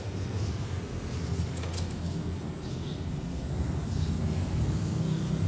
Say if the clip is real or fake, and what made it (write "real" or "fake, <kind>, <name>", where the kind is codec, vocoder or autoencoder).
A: fake, codec, SNAC